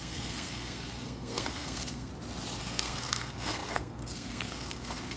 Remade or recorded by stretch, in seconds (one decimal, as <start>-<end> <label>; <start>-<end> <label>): 0.0-2.1 remade; 2.1-2.6 recorded; 2.6-5.2 remade